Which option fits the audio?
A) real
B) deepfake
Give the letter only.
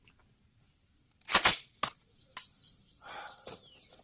A